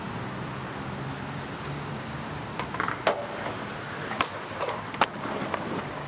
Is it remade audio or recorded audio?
recorded